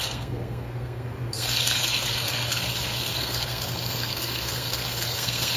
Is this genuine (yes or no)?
no